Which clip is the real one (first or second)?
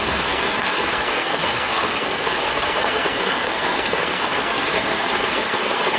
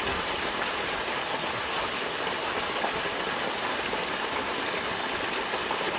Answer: second